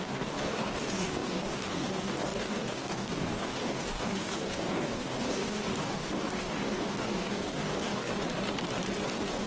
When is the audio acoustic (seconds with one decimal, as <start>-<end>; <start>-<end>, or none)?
8.1-9.1